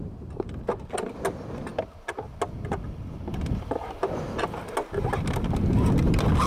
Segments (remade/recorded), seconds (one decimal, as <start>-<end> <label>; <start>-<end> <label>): 0.0-6.5 recorded